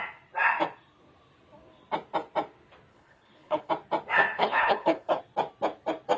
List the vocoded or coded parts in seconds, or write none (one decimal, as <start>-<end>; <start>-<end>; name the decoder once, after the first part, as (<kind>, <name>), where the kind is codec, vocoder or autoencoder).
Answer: 2.9-3.7 (codec, HILCodec); 4.4-5.2